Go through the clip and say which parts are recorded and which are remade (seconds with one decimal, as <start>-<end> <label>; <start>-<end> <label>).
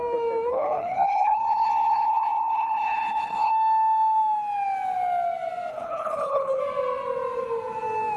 0.0-0.5 recorded; 0.5-3.5 remade; 3.5-5.7 recorded; 5.7-6.6 remade; 6.6-8.2 recorded